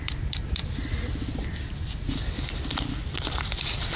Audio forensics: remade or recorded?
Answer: recorded